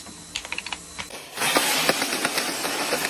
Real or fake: real